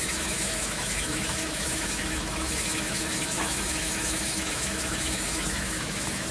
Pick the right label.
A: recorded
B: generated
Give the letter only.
B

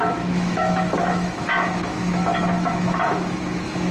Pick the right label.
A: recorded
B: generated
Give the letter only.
B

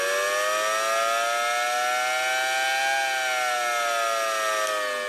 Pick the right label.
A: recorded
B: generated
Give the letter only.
A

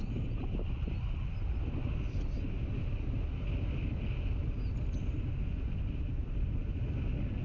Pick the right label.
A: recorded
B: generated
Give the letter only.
A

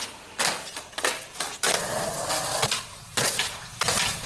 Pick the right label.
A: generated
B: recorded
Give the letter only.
B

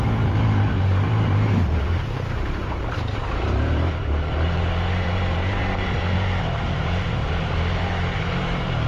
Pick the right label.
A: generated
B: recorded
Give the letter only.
A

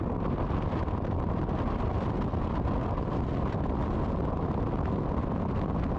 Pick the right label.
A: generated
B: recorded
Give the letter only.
B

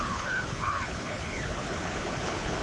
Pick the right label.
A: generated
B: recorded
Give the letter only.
A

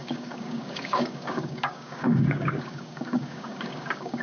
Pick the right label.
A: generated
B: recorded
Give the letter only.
A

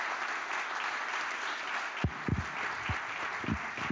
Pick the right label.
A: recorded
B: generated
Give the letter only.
A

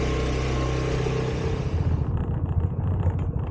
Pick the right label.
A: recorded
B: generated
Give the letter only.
A